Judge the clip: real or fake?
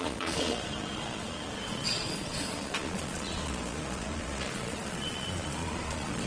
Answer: fake